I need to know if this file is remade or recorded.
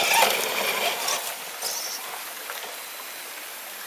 recorded